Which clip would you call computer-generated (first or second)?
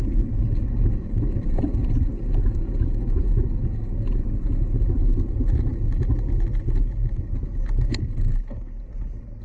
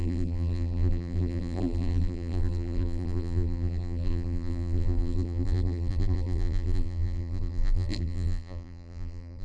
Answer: second